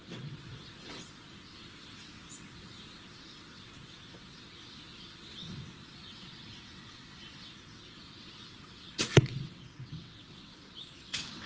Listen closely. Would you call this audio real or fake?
fake